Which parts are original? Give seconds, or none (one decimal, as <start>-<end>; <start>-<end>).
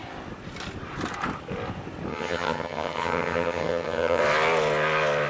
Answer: 0.0-2.1; 4.2-5.3